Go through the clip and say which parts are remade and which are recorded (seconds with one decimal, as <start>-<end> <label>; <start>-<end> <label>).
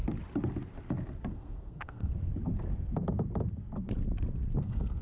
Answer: 0.0-1.3 recorded; 1.3-2.1 remade; 2.1-4.6 recorded; 4.6-5.0 remade